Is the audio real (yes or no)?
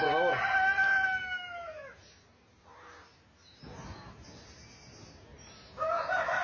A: yes